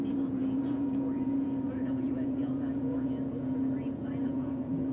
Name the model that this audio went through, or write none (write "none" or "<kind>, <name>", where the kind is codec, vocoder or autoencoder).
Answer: vocoder, Vocos